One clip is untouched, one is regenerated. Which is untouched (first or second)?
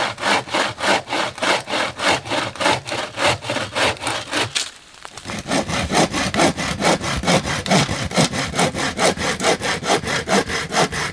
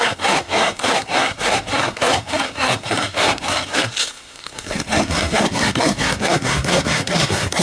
first